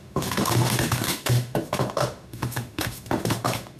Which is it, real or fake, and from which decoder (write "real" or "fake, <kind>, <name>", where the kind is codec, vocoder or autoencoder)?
fake, autoencoder, DAC-VAE